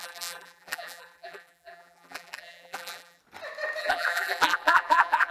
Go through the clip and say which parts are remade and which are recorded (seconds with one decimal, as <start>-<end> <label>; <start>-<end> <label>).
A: 0.0-3.2 remade; 3.2-3.8 recorded; 3.8-5.3 remade